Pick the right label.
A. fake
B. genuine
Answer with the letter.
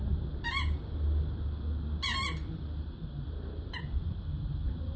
A